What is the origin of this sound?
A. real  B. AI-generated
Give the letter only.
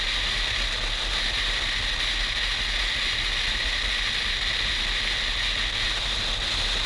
A